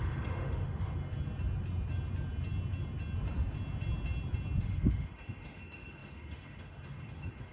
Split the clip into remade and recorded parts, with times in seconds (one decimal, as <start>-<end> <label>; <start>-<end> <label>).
0.0-1.0 remade; 1.0-4.6 recorded; 4.6-7.5 remade

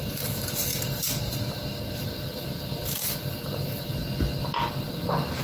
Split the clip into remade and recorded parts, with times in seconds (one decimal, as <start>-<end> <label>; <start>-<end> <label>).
0.0-4.0 remade; 4.0-5.4 recorded

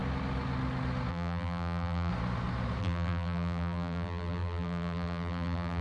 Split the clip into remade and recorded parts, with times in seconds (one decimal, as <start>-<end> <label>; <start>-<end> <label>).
0.0-1.1 recorded; 1.1-2.1 remade; 2.1-2.8 recorded; 2.8-5.8 remade

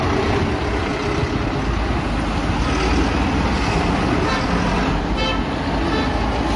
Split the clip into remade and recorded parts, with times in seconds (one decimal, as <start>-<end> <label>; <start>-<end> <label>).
0.0-6.6 recorded

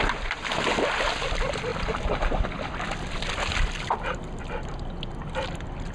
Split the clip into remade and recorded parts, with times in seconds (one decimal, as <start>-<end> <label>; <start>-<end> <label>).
0.0-5.9 recorded

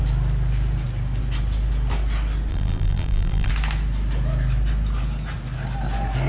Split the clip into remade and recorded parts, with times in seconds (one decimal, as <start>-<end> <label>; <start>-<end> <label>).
0.0-2.5 recorded; 2.5-3.5 remade; 3.5-6.3 recorded

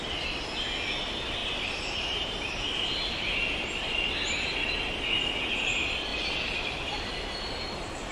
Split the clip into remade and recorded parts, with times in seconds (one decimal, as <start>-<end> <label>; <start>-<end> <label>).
0.0-1.4 recorded; 1.4-3.8 remade; 3.8-6.1 recorded; 6.1-8.1 remade

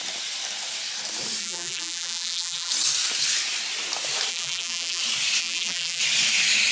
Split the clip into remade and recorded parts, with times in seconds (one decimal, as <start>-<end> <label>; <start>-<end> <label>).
0.0-1.4 recorded; 1.4-2.7 remade; 2.7-4.3 recorded; 4.3-5.0 remade; 5.0-5.4 recorded; 5.4-6.0 remade; 6.0-6.7 recorded